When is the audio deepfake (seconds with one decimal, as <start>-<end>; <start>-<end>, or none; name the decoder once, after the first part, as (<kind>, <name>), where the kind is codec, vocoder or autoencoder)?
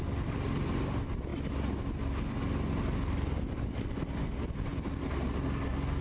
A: none